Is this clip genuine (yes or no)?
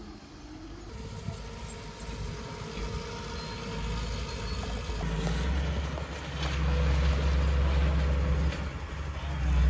yes